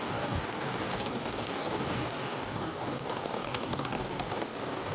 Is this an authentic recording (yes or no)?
no